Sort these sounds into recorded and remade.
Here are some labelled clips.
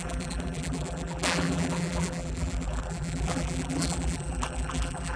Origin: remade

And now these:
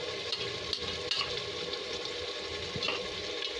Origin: recorded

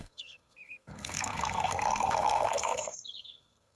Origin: remade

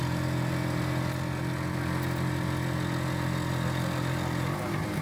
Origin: recorded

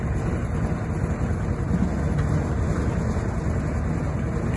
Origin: recorded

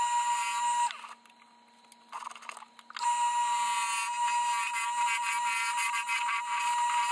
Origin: recorded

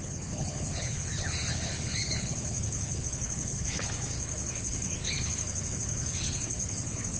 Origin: remade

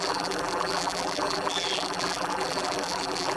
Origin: remade